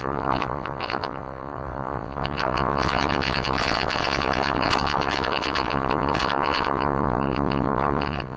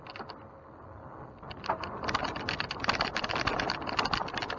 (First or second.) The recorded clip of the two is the second